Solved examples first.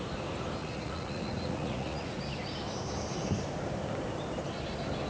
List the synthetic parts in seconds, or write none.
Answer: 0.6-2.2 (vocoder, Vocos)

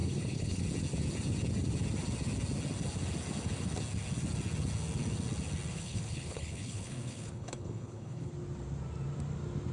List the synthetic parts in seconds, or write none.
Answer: 0.0-0.6 (codec, HILCodec); 5.7-8.3